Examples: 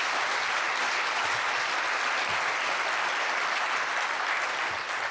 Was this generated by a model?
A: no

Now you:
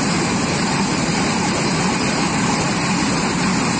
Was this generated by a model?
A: yes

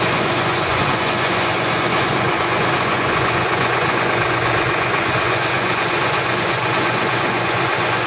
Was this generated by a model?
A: yes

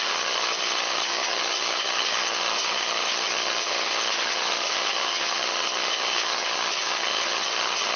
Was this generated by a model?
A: yes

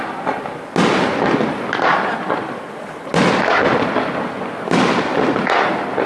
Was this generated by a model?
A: no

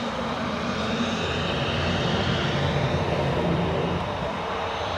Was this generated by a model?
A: no